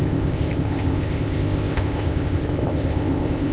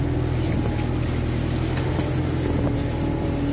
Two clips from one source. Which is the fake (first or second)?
first